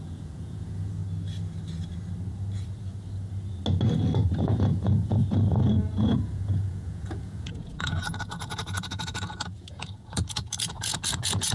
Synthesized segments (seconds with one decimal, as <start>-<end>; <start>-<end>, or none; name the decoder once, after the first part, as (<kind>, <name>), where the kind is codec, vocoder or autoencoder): 0.0-1.0 (vocoder, Vocos); 4.4-5.2; 6.0-11.5